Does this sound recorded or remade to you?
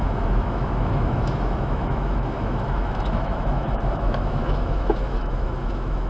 remade